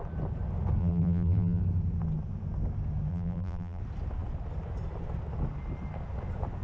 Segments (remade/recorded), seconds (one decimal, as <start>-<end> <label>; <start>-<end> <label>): 0.0-0.8 recorded; 0.8-1.6 remade; 1.6-3.1 recorded; 3.1-3.8 remade; 3.8-6.6 recorded